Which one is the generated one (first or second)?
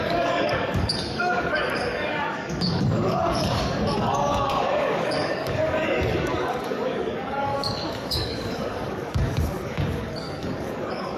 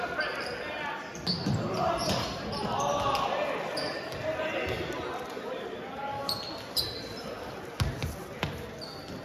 first